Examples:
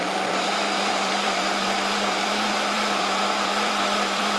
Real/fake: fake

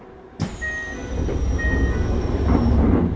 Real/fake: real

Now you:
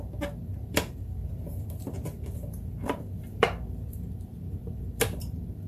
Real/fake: fake